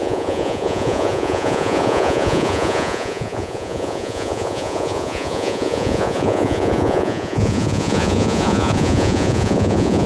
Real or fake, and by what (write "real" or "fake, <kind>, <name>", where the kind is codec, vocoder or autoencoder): fake, vocoder, Vocos